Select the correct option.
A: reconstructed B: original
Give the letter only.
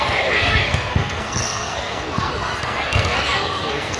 A